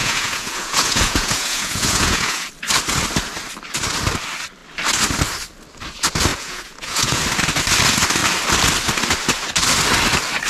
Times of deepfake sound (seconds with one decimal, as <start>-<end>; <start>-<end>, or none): 0.0-2.5; 6.3-7.2